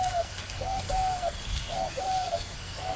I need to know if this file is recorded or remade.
remade